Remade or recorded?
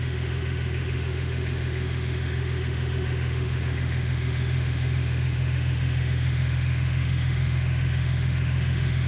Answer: remade